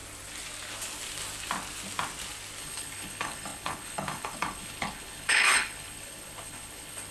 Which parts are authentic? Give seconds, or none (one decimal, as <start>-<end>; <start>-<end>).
0.0-2.6